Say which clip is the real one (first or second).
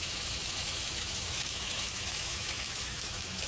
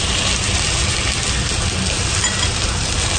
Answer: second